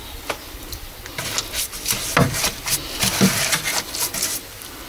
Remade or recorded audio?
recorded